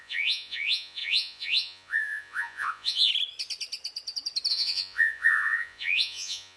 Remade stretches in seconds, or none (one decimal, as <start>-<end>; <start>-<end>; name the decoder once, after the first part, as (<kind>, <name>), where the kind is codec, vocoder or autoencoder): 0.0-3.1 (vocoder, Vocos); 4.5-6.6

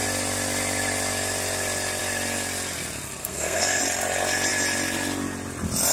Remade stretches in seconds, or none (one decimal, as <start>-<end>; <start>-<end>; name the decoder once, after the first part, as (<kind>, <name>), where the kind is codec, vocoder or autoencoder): 3.2-3.8 (codec, SNAC)

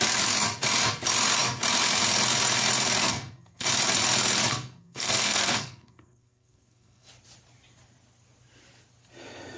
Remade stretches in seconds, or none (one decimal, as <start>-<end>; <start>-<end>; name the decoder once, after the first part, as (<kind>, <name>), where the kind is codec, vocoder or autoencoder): 3.0-3.7 (codec, SNAC); 4.5-7.1